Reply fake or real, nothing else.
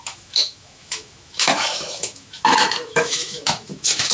fake